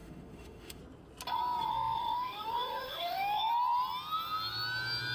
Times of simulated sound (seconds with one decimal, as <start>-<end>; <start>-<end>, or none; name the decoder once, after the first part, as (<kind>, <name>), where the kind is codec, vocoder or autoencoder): 0.0-0.8 (autoencoder, DAC-VAE); 1.7-3.5